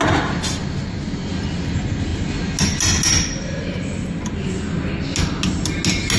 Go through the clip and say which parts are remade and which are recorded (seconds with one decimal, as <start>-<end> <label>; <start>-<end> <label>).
0.0-6.2 recorded